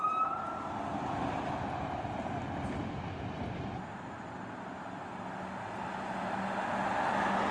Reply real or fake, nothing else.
real